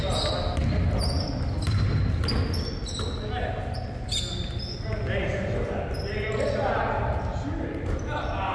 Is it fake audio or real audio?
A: real